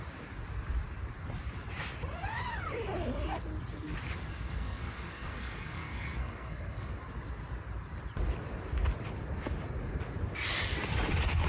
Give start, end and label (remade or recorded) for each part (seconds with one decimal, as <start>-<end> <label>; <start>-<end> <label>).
0.0-4.3 recorded; 4.3-6.9 remade; 6.9-11.5 recorded